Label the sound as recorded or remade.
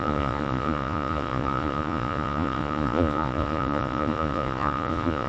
remade